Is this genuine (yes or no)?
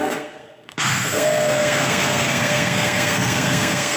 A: no